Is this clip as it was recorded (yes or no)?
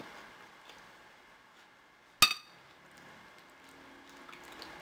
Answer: yes